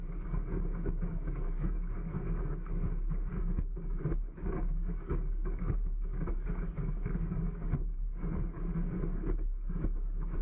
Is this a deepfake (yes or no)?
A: yes